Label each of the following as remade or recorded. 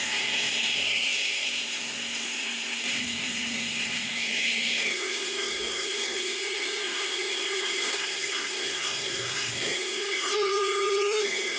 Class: remade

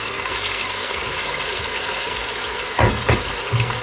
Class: remade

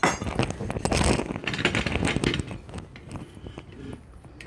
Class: recorded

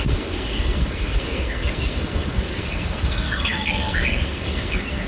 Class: remade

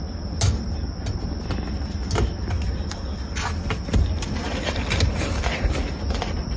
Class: recorded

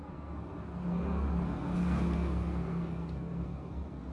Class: remade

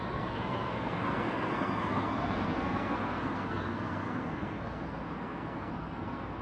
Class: remade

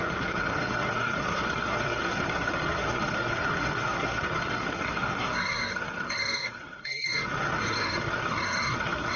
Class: remade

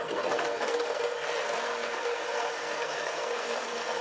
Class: remade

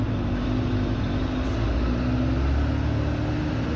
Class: recorded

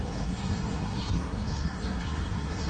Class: remade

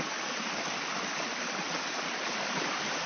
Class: recorded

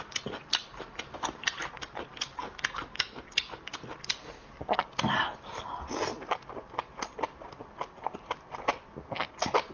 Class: recorded